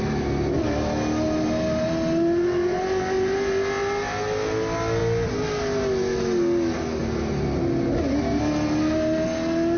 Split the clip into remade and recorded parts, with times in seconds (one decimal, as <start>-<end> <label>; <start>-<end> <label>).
0.0-9.8 recorded